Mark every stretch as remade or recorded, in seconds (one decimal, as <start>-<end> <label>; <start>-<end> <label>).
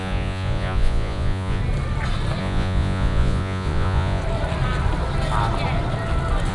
0.0-1.6 remade; 1.6-2.4 recorded; 2.4-4.2 remade; 4.2-6.5 recorded